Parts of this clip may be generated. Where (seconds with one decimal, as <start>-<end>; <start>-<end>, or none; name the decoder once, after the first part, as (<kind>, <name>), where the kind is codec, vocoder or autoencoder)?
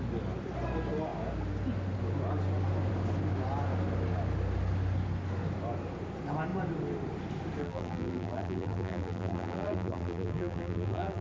7.6-11.2 (vocoder, BigVGAN v2)